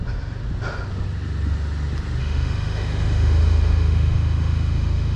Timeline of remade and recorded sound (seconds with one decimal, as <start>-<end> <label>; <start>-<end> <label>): 0.0-2.2 recorded; 2.2-5.2 remade